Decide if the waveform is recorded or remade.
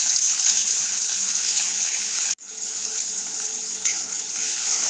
remade